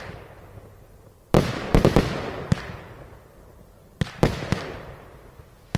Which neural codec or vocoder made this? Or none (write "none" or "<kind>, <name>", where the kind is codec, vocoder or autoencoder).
vocoder, BigVGAN v2